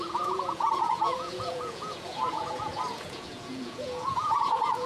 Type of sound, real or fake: fake